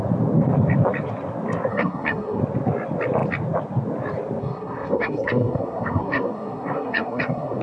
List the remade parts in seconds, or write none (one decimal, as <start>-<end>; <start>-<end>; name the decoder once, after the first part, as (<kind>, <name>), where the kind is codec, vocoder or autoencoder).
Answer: 1.7-2.4 (codec, SNAC); 4.4-7.6